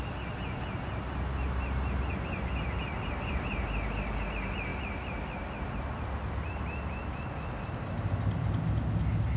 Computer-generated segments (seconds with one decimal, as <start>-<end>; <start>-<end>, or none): none